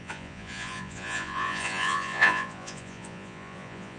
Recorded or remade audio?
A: remade